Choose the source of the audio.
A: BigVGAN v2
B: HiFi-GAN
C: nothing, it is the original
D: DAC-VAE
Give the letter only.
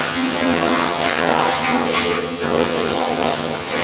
B